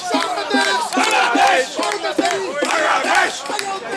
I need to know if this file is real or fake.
real